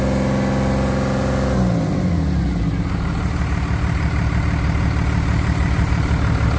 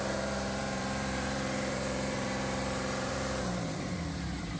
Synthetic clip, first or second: second